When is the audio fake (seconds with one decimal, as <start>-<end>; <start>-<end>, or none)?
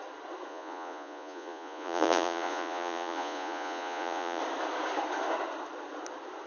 0.5-4.4